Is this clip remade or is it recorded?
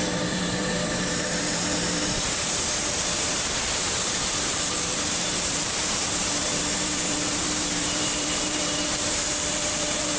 remade